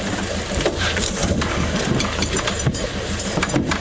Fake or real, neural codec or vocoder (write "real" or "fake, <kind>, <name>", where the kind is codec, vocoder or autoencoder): fake, vocoder, BigVGAN v2